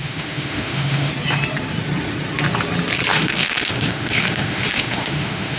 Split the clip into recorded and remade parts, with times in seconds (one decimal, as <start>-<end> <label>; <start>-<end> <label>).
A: 0.0-1.1 remade; 1.1-3.1 recorded; 3.1-5.6 remade